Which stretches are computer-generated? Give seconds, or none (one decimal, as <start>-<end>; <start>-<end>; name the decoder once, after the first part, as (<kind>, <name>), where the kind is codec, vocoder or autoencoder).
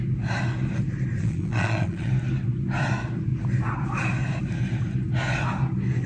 1.2-2.1 (vocoder, Vocos)